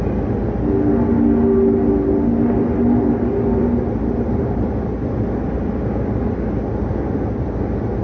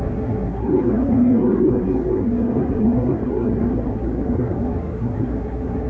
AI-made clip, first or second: second